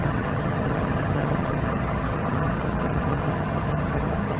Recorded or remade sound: remade